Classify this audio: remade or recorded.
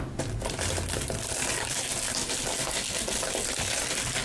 recorded